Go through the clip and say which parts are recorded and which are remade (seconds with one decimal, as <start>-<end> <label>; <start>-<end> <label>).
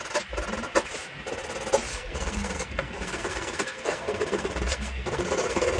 0.0-1.9 recorded; 1.9-5.8 remade